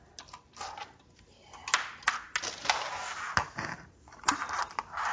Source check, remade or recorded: recorded